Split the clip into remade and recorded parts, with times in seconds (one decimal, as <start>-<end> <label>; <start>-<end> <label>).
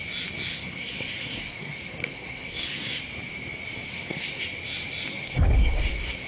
0.0-0.5 recorded; 0.5-3.0 remade; 3.0-3.9 recorded; 3.9-4.4 remade; 4.4-5.1 recorded; 5.1-6.3 remade